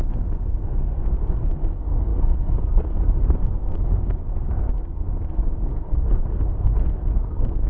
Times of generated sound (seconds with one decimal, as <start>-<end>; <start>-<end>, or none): 0.0-7.7